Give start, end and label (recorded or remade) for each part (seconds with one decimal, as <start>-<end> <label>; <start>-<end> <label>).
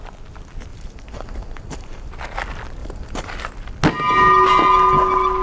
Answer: 0.0-0.7 recorded; 0.7-2.1 remade; 2.1-2.8 recorded; 2.8-3.4 remade; 3.4-5.4 recorded